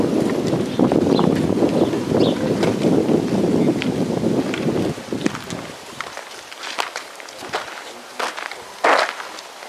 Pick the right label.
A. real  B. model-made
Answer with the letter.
A